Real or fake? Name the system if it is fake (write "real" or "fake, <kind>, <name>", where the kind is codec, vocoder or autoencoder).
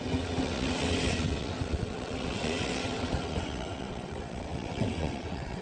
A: fake, vocoder, WaveNeXt